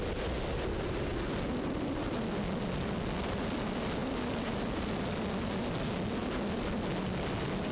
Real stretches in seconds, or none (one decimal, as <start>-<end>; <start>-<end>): 0.0-7.7